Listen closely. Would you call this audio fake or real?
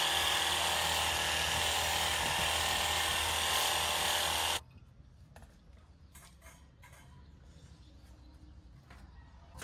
real